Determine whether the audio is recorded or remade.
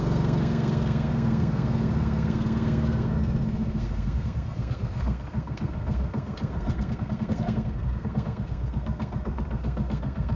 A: remade